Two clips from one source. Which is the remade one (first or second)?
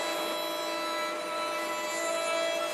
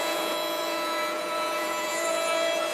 second